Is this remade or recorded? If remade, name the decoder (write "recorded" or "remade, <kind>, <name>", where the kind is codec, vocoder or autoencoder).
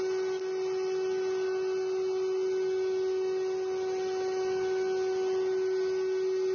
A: recorded